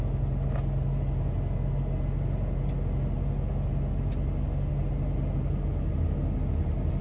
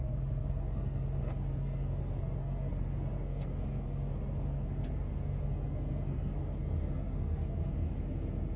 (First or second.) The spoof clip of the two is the second